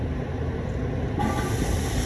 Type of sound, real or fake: real